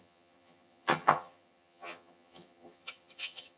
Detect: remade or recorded remade